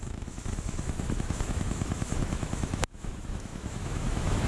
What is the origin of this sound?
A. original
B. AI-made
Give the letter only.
B